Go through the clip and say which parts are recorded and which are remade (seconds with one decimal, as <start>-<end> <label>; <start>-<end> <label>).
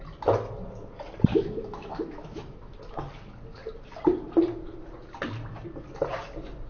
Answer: 0.0-1.3 recorded; 1.3-2.8 remade; 2.8-6.7 recorded